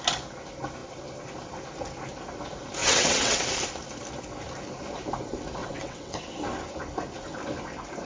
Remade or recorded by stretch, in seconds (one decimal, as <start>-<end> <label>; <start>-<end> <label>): 0.0-2.8 recorded; 2.8-3.4 remade; 3.4-5.6 recorded; 5.6-6.2 remade; 6.2-8.0 recorded